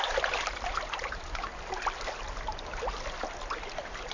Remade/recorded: recorded